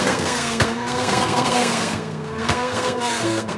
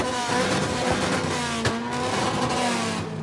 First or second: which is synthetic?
first